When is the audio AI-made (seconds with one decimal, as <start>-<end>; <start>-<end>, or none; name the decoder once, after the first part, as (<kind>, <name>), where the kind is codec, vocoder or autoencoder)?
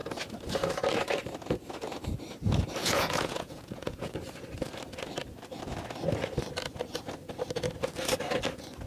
2.8-4.1 (vocoder, Vocos)